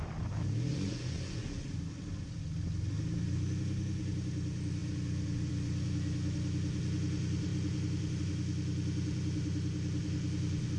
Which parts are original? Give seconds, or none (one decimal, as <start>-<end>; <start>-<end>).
0.0-0.7; 1.7-10.8